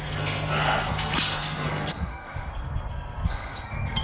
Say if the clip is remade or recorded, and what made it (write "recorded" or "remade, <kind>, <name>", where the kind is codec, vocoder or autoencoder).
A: remade, codec, SNAC